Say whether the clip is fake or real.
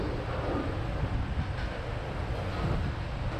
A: real